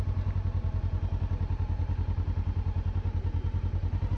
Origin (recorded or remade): recorded